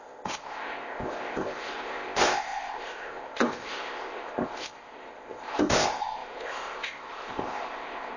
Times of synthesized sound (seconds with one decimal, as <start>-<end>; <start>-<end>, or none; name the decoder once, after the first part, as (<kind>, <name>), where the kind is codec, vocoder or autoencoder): 0.0-8.2 (codec, ZipCodec)